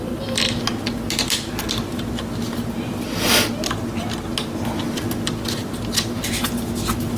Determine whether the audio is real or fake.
real